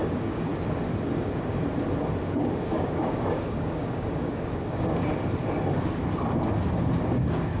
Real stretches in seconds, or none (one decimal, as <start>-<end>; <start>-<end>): 0.5-2.3; 5.1-7.1